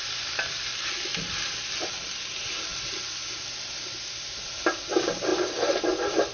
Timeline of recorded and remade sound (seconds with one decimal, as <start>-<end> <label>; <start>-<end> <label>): 0.0-1.1 remade; 1.1-1.9 recorded; 1.9-2.7 remade; 2.7-4.7 recorded; 4.7-6.3 remade